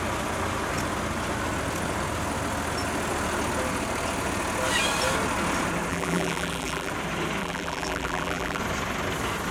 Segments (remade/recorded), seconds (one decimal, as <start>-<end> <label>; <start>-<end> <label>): 0.0-5.9 recorded; 5.9-6.9 remade; 6.9-7.4 recorded; 7.4-8.6 remade; 8.6-9.5 recorded